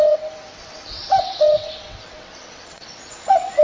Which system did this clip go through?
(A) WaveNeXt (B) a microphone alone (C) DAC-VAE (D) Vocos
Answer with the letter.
A